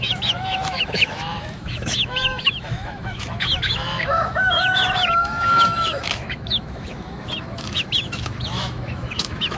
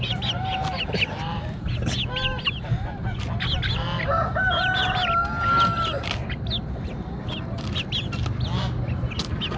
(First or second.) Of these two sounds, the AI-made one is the first